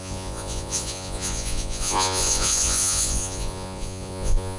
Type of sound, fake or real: fake